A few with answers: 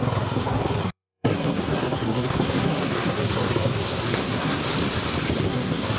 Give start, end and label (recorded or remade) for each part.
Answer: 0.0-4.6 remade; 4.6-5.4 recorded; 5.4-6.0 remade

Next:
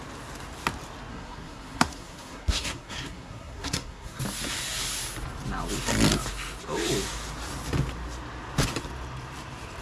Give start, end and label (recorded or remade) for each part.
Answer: 0.0-1.1 recorded; 1.1-4.2 remade; 4.2-9.8 recorded

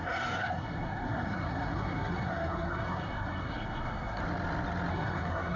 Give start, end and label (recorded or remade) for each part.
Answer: 0.0-4.2 remade; 4.2-4.9 recorded; 4.9-5.6 remade